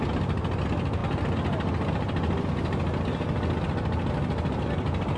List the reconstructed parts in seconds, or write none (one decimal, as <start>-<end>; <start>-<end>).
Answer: none